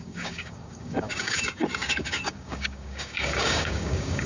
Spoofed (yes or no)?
yes